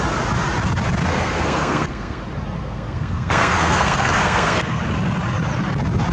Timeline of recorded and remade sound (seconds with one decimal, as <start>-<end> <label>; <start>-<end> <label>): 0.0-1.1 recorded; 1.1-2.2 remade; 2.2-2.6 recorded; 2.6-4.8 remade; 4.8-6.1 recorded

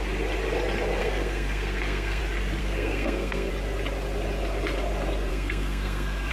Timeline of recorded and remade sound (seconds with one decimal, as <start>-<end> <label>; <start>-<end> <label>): 0.0-1.0 recorded; 1.0-2.2 remade; 2.2-2.6 recorded; 2.6-3.5 remade; 3.5-5.3 recorded; 5.3-6.3 remade

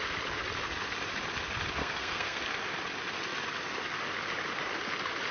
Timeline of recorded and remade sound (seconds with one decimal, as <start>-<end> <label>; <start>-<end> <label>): 0.0-1.8 recorded; 1.8-2.4 remade; 2.4-5.3 recorded